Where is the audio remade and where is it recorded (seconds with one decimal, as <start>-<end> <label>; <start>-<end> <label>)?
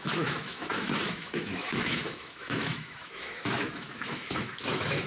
0.0-5.1 remade